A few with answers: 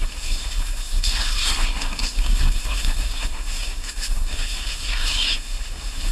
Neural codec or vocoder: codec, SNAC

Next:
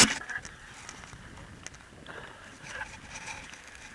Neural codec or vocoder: none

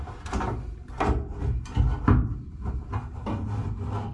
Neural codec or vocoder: none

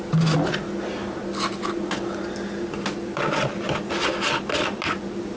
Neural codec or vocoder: none